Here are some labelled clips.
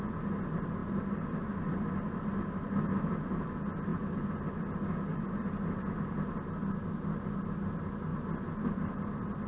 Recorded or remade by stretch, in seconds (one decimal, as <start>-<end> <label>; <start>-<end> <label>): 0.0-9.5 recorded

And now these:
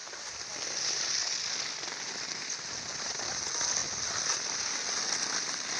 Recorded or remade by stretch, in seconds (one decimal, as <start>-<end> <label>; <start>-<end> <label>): 0.0-5.8 recorded

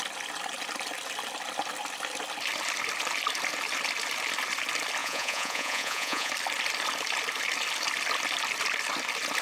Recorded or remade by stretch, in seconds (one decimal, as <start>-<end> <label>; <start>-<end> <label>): 0.0-5.0 recorded; 5.0-6.3 remade; 6.3-9.4 recorded

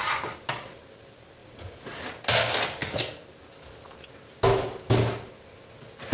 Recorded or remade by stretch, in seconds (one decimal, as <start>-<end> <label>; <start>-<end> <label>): 0.0-1.4 recorded; 1.4-2.0 remade; 2.0-6.1 recorded

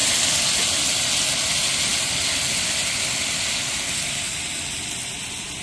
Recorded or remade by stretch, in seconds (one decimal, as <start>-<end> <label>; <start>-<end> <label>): 0.0-5.6 recorded